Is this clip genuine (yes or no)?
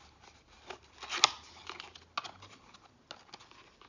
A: yes